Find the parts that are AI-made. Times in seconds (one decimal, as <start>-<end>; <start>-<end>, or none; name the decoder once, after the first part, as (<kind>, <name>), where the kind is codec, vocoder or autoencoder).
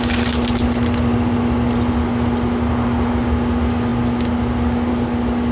none